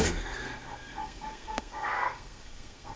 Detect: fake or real fake